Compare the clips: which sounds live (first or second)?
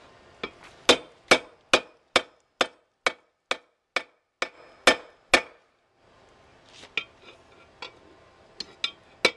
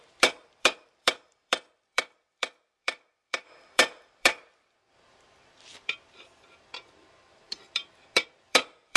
first